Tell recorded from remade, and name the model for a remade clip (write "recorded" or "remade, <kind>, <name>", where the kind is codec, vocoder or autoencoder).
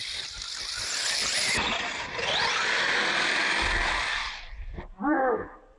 recorded